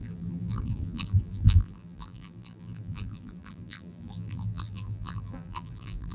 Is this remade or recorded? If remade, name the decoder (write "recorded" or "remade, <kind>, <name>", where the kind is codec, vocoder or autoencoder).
remade, vocoder, BigVGAN v2